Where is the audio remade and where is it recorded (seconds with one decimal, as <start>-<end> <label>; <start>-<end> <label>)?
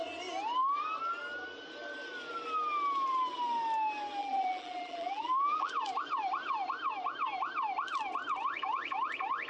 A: 0.0-4.2 recorded; 4.2-5.7 remade; 5.7-9.5 recorded